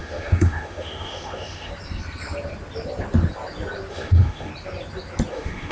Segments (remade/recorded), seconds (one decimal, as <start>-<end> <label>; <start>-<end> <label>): 0.0-1.7 remade; 1.7-3.9 recorded; 3.9-4.5 remade; 4.5-5.3 recorded; 5.3-5.7 remade